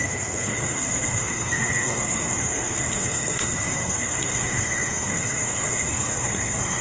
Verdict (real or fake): fake